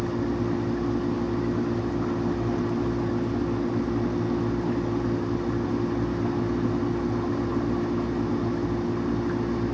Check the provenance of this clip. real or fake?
real